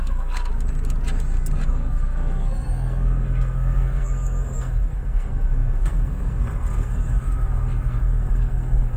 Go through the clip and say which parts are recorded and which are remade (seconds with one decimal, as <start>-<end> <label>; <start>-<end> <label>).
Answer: 0.0-0.5 remade; 0.5-1.7 recorded; 1.7-9.0 remade

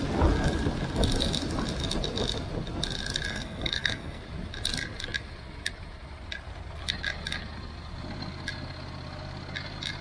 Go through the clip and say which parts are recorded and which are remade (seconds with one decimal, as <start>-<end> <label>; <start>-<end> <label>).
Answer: 0.0-3.3 recorded; 3.3-4.2 remade; 4.2-10.0 recorded